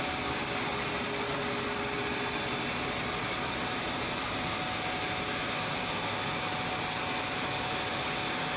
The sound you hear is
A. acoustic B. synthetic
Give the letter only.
A